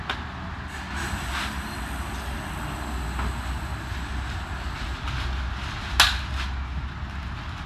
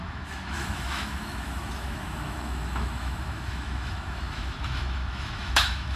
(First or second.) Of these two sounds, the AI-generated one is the second